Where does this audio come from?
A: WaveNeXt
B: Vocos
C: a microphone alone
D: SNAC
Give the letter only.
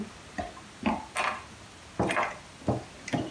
C